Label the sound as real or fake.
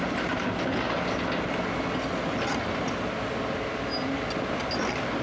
real